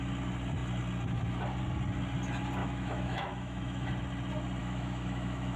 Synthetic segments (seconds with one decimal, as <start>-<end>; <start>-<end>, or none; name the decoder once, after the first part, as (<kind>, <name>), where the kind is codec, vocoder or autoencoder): 2.6-3.9 (autoencoder, DAC-VAE); 4.6-5.6